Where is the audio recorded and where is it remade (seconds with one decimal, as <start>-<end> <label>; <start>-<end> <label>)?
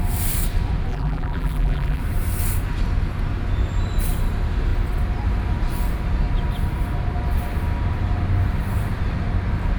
0.0-0.9 recorded; 0.9-2.0 remade; 2.0-9.8 recorded